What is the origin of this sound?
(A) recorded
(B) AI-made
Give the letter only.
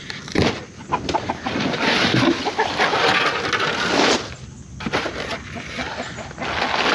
A